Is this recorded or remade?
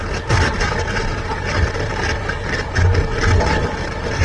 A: recorded